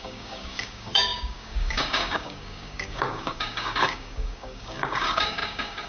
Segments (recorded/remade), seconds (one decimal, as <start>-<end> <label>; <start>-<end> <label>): 0.0-5.9 remade